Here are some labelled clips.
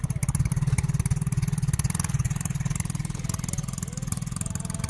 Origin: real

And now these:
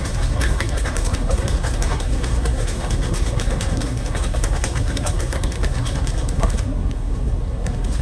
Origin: fake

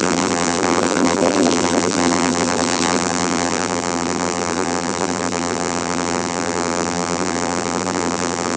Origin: fake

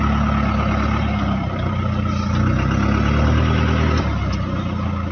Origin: real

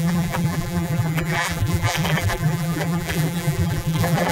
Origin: fake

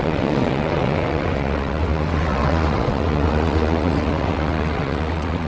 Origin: fake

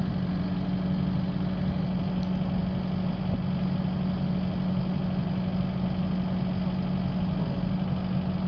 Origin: real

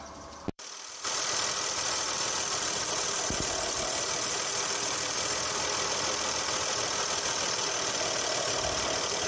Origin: fake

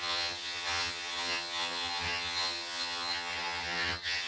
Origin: fake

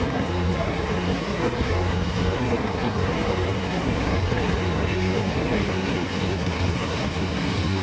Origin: fake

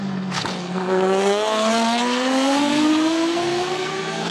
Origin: fake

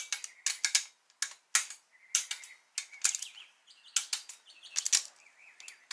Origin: real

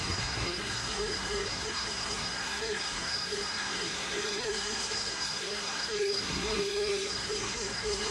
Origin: fake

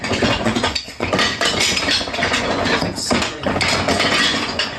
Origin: fake